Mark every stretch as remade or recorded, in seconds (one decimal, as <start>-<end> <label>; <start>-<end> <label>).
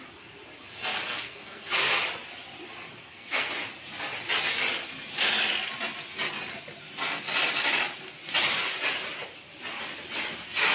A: 0.0-1.1 recorded; 1.1-1.7 remade; 1.7-3.0 recorded; 3.0-3.5 remade; 3.5-10.7 recorded